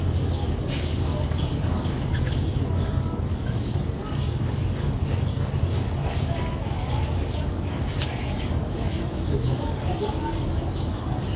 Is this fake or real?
fake